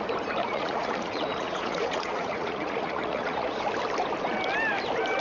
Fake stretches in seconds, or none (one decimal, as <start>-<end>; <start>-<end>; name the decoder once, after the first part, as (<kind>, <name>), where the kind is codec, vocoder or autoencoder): 0.4-3.5 (vocoder, Vocos)